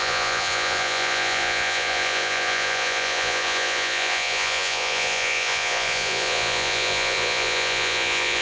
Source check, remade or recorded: remade